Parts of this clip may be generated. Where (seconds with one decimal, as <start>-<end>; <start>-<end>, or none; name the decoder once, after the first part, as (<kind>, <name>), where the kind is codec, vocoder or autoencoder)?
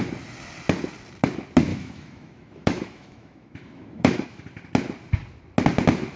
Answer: 1.7-4.4 (autoencoder, DAC-VAE)